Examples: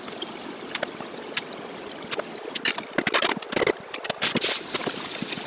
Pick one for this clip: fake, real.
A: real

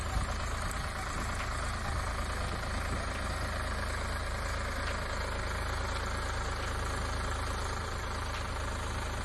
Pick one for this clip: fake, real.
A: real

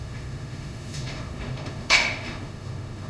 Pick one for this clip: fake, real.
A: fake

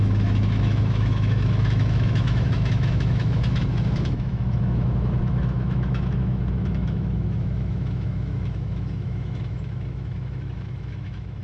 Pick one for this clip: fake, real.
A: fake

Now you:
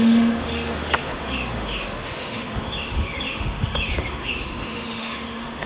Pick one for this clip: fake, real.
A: fake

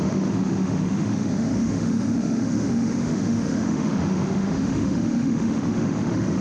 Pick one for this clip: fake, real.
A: fake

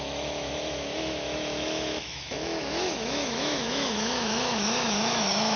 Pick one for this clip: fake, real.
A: fake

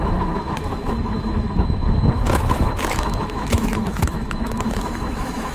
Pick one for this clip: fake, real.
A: fake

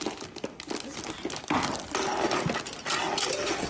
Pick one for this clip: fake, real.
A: real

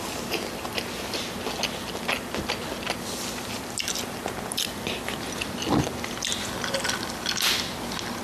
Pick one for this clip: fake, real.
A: real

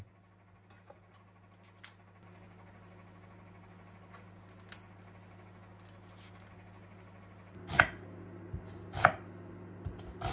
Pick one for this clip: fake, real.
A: real